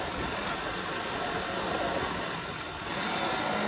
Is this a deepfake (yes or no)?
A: no